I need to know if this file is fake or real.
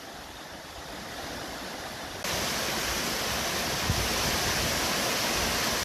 real